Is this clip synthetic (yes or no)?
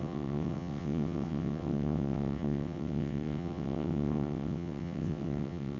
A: yes